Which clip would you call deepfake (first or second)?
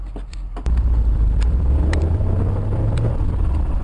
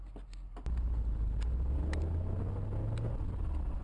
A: first